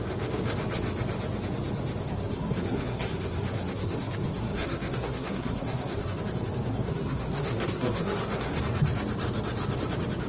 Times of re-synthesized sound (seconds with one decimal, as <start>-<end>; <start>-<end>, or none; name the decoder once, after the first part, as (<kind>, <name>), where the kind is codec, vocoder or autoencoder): 2.1-6.2 (codec, SNAC); 6.7-8.6